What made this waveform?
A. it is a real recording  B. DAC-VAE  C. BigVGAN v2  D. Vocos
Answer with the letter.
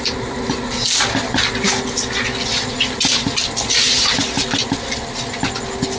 A